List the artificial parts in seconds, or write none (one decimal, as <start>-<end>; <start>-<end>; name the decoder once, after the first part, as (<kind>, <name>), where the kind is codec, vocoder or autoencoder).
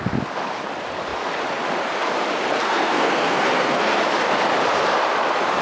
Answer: 2.6-4.0 (codec, SNAC)